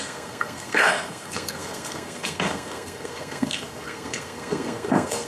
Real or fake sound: fake